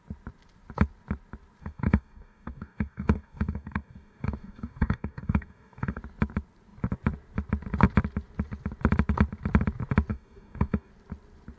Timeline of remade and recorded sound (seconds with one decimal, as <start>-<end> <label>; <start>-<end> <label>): 0.0-1.6 recorded; 1.6-6.0 remade; 6.0-10.1 recorded; 10.1-10.9 remade; 10.9-11.6 recorded